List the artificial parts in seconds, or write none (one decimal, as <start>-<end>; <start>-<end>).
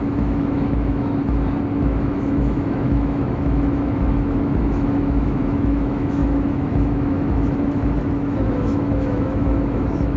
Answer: 0.0-1.2; 1.8-10.2